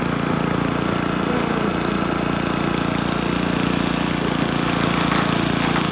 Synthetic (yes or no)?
no